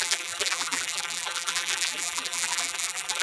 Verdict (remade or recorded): remade